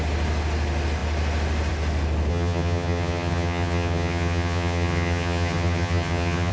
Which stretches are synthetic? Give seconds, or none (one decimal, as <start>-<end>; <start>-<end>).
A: 2.3-6.5